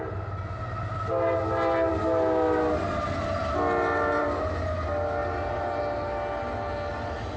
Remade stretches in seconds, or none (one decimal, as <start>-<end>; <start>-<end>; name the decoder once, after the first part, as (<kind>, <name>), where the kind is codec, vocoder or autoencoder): none